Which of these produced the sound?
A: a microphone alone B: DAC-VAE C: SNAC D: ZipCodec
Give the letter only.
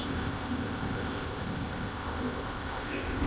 D